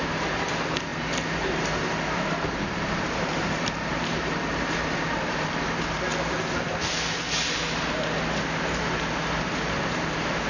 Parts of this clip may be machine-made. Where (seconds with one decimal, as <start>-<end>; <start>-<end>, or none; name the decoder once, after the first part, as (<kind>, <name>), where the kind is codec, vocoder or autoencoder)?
0.0-6.1 (vocoder, BigVGAN v2); 9.4-10.5